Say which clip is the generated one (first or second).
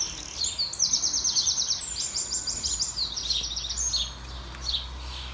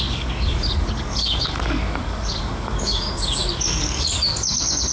second